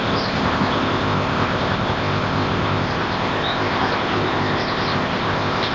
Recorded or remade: remade